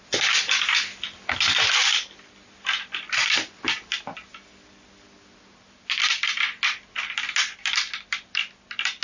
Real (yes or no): yes